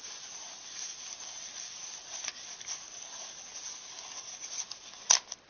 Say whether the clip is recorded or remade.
recorded